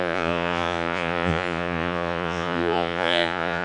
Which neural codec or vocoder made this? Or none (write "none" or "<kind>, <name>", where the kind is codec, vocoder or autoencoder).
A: vocoder, Vocos